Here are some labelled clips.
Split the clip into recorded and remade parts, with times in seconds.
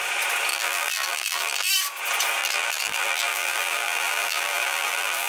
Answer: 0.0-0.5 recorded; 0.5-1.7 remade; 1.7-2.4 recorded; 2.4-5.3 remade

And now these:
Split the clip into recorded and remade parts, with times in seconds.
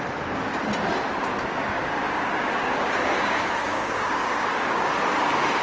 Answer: 0.0-1.5 recorded; 1.5-4.9 remade; 4.9-5.6 recorded